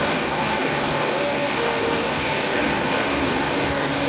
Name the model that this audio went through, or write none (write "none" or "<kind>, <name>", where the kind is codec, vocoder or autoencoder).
codec, DAC